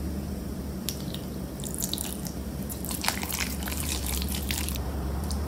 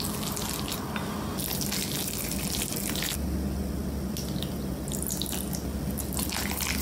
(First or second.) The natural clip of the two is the second